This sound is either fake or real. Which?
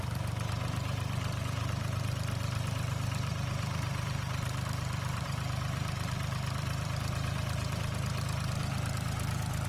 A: fake